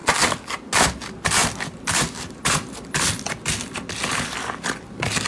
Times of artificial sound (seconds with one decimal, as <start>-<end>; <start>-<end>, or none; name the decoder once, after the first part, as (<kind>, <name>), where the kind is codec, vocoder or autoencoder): 1.4-4.6 (vocoder, BigVGAN v2)

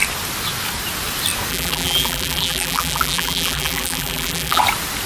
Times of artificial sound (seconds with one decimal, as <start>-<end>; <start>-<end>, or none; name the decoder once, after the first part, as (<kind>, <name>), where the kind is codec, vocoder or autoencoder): 1.5-4.6 (vocoder, BigVGAN v2)

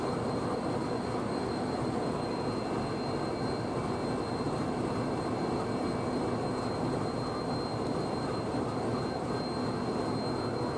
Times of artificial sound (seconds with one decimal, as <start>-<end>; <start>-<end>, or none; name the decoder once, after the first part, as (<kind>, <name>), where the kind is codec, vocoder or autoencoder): none

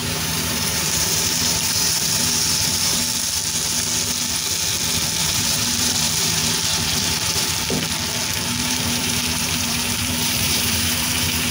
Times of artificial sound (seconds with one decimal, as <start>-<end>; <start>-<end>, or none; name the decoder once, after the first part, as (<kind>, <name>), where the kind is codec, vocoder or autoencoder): 0.0-3.0 (vocoder, BigVGAN v2); 5.2-7.6; 8.6-11.5